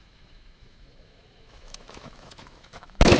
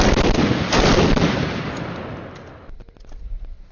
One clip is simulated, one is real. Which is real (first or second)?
second